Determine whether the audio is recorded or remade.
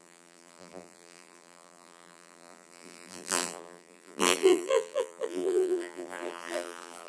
remade